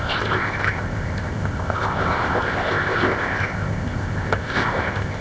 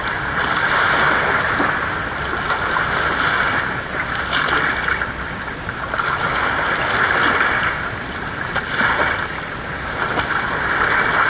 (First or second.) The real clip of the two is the second